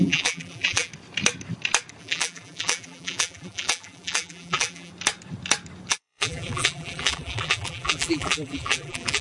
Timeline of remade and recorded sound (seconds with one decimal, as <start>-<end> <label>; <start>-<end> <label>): 0.0-0.9 remade; 0.9-2.0 recorded; 2.0-4.9 remade; 4.9-5.9 recorded; 5.9-9.2 remade

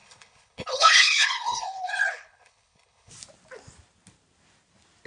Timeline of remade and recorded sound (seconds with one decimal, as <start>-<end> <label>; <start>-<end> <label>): 0.0-3.1 remade; 3.1-5.1 recorded

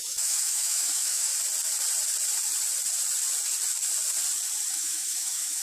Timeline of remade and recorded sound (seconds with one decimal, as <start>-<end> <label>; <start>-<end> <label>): 0.0-1.3 remade; 1.3-4.7 recorded; 4.7-5.6 remade

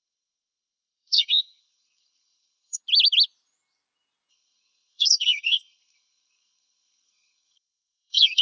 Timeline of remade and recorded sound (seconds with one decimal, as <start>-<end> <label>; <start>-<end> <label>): 0.0-2.8 remade; 2.8-4.3 recorded; 4.3-8.4 remade

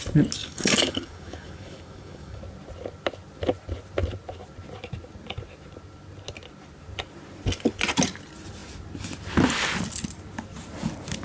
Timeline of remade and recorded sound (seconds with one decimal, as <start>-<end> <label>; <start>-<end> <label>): 0.0-0.4 recorded; 0.4-2.4 remade; 2.4-11.2 recorded